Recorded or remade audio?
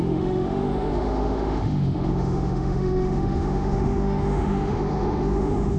remade